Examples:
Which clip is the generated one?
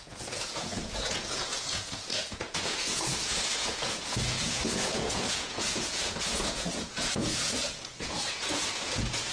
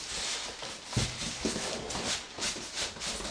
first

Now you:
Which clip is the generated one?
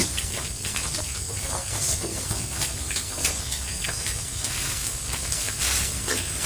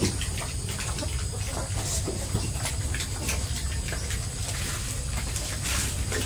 first